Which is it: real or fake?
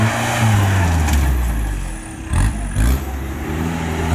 real